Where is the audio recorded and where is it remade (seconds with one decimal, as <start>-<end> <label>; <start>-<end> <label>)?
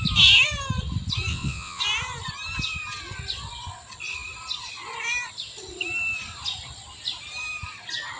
0.0-1.3 recorded; 1.3-1.8 remade; 1.8-8.2 recorded